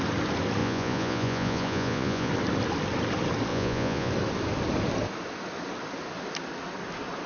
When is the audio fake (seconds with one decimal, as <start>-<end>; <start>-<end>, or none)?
0.6-2.3; 3.5-4.1